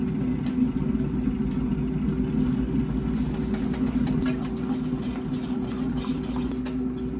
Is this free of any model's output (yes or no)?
yes